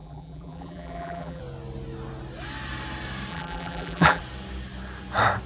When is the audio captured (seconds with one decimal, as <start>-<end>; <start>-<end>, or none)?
1.4-3.3; 4.2-5.5